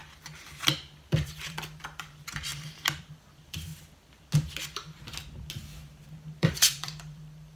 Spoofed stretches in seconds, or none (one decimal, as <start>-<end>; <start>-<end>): 1.1-2.5; 3.0-3.7; 6.4-7.6